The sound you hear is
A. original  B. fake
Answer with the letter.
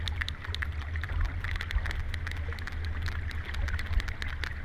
A